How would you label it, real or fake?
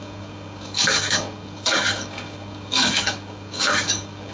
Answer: fake